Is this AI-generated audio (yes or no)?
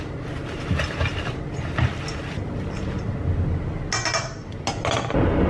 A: no